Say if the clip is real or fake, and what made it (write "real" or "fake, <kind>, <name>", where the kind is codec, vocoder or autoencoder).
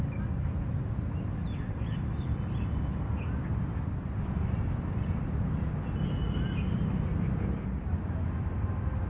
real